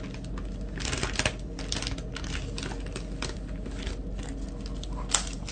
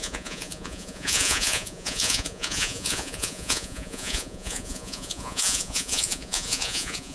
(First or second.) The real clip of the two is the first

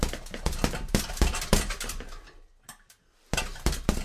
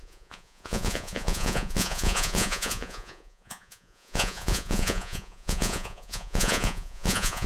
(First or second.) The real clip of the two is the first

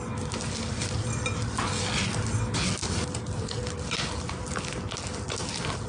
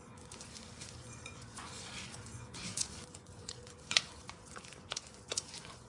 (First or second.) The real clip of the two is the first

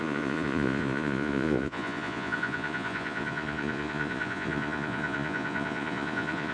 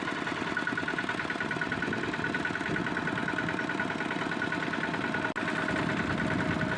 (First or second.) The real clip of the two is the second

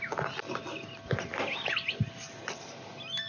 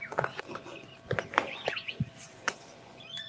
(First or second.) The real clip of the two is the first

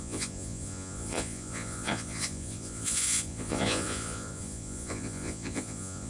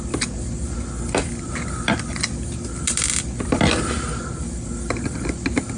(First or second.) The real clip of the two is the second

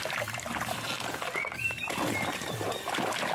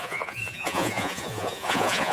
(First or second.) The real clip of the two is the first